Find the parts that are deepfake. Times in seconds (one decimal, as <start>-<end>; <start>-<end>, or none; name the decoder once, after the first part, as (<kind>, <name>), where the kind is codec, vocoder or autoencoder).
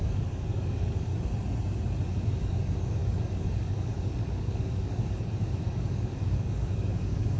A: 0.0-1.1 (codec, DAC); 2.1-7.4